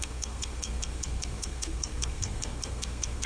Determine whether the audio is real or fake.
fake